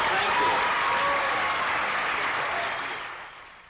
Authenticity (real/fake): real